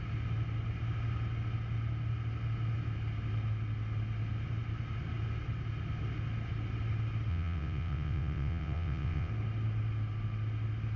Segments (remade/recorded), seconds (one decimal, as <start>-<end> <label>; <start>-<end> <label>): 0.0-7.3 recorded; 7.3-9.3 remade; 9.3-11.0 recorded